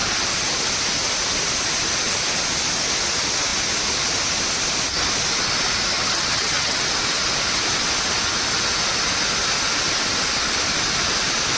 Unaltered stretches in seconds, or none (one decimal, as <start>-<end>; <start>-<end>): 0.0-5.9; 6.8-11.6